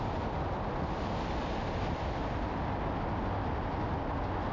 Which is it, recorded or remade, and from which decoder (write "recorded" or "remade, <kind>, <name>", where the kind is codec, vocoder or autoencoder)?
recorded